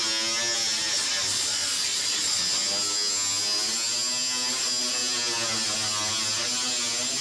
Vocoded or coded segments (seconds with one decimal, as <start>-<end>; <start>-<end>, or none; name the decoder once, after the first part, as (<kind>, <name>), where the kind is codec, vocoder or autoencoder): 1.3-2.4 (vocoder, Vocos)